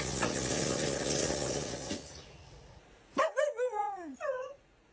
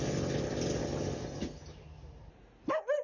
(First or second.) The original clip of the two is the second